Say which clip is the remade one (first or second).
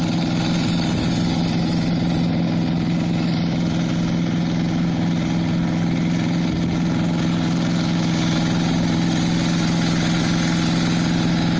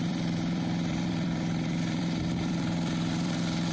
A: second